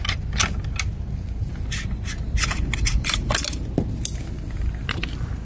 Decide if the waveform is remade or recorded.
recorded